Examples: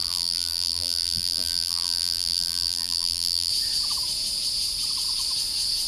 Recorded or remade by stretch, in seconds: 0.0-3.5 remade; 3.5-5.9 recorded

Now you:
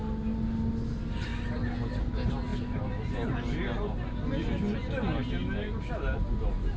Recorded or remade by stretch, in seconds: 0.0-6.8 recorded

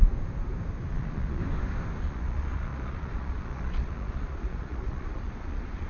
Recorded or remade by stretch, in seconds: 0.0-0.9 recorded; 0.9-1.4 remade; 1.4-2.0 recorded; 2.0-5.9 remade